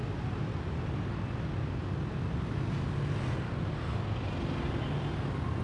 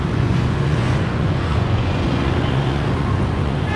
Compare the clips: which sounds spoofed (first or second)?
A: second